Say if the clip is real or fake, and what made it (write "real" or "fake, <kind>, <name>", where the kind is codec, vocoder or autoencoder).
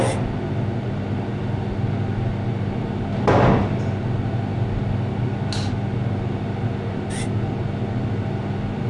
real